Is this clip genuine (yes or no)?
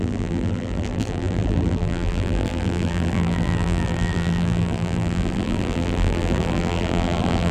no